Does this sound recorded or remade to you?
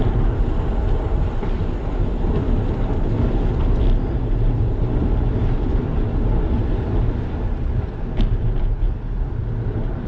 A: recorded